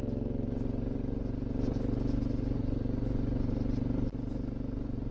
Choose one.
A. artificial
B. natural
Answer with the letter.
B